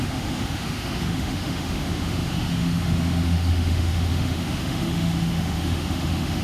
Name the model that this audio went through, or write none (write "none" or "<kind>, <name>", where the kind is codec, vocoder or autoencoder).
autoencoder, DAC-VAE